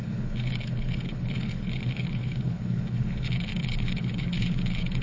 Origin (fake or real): fake